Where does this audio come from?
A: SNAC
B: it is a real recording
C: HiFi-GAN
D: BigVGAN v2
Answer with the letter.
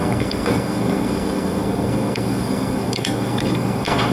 A